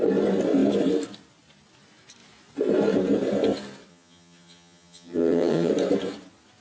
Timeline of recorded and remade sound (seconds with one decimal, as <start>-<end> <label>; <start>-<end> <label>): 0.0-3.9 recorded; 3.9-5.7 remade; 5.7-6.6 recorded